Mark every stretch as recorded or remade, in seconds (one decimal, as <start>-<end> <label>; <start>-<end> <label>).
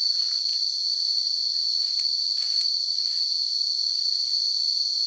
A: 0.0-5.1 recorded